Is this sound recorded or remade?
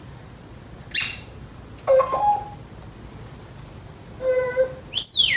recorded